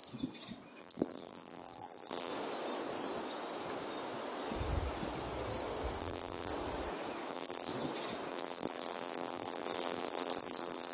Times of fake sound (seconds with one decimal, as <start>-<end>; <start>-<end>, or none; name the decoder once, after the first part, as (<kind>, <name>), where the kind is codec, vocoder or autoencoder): 0.8-2.3 (vocoder, BigVGAN v2); 6.0-6.5; 7.3-7.7; 8.3-10.9

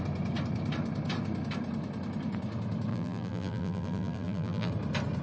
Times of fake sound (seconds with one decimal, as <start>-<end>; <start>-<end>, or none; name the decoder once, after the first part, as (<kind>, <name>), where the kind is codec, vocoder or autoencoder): 2.9-4.7 (vocoder, BigVGAN v2)

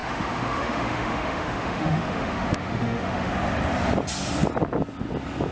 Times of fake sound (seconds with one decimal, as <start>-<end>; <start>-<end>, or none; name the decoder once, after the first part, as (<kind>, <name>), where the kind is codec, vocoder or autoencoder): 0.0-3.3 (autoencoder, DAC-VAE)

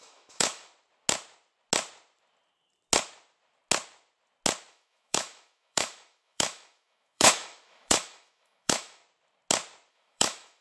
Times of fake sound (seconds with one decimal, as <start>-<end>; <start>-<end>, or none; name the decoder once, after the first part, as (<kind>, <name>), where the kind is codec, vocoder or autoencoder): 0.0-0.7 (autoencoder, DAC-VAE); 4.7-9.0; 9.9-10.6

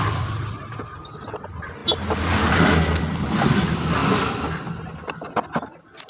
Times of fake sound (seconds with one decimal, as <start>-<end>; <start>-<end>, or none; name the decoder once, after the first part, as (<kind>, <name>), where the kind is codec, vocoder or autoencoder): none

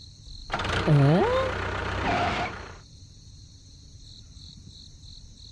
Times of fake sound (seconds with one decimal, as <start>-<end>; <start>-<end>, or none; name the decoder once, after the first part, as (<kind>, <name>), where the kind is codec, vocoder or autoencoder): 0.4-1.2 (vocoder, BigVGAN v2); 1.8-4.8